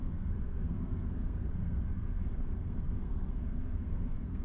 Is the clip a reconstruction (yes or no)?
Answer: yes